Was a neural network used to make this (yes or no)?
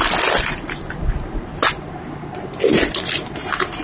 no